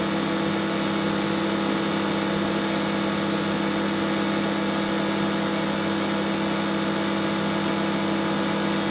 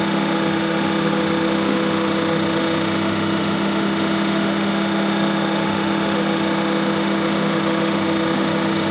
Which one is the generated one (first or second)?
second